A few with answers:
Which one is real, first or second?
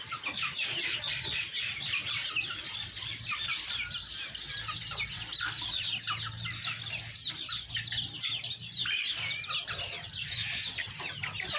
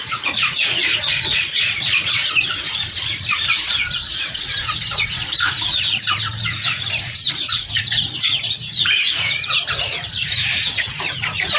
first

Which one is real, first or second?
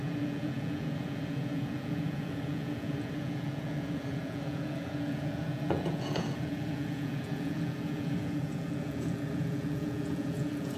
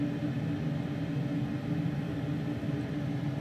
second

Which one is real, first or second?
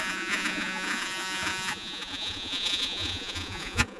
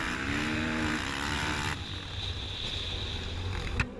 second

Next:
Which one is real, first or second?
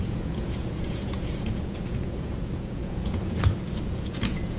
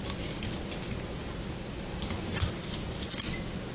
second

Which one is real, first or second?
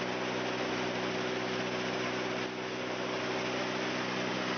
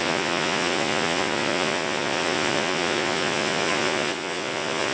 first